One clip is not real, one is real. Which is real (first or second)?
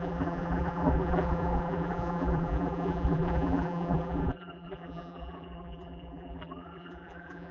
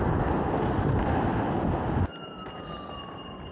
second